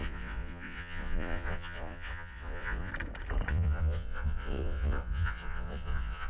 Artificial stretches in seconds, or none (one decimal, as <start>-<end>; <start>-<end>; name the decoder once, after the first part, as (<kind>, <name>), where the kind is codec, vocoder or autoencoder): 0.0-2.9 (vocoder, Vocos); 3.5-6.3